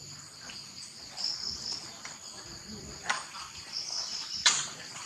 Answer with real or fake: real